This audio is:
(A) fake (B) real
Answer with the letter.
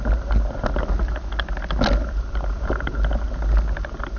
B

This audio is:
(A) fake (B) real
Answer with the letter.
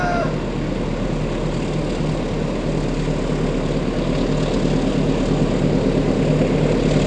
B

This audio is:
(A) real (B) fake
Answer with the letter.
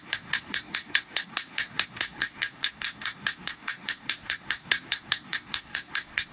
B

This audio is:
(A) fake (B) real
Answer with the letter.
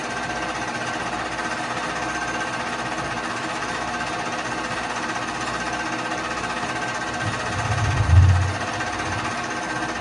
B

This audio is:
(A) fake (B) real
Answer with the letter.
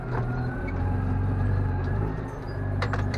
A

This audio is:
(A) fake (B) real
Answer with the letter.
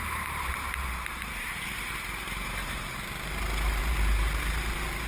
A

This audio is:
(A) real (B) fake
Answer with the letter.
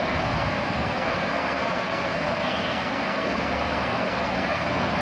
B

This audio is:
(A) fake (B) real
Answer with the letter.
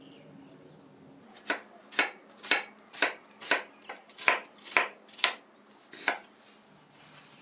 B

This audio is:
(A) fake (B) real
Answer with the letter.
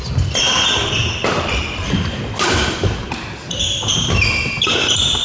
B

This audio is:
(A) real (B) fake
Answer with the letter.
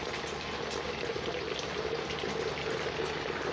A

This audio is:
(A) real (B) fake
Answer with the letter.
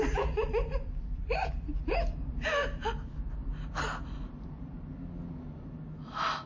A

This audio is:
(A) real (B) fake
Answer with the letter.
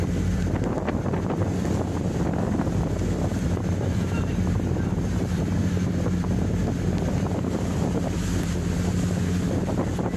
B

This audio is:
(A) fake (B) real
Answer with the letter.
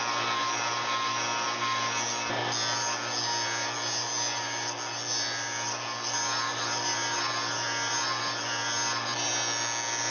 B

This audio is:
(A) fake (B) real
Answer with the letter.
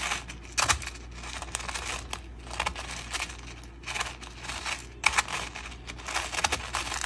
B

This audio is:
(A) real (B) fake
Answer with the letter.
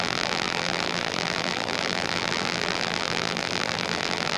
B